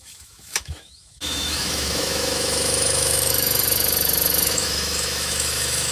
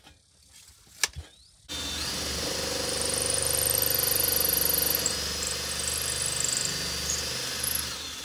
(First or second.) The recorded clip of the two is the second